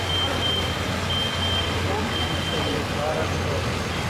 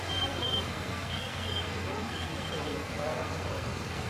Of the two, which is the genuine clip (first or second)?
first